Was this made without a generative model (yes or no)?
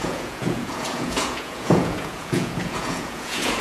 no